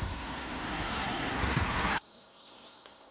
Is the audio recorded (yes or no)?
no